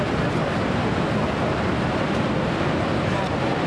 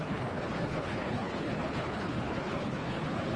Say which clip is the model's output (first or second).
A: second